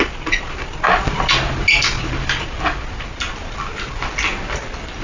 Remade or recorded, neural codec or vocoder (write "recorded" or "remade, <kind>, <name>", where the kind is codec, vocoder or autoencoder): recorded